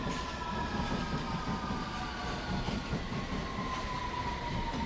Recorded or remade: recorded